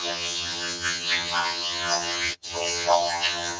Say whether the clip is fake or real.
fake